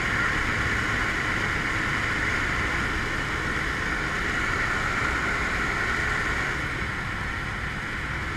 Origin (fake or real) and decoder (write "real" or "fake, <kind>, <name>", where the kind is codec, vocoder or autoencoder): real